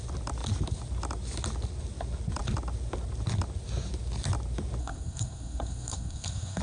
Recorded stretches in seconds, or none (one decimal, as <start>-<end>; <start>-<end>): 0.0-4.8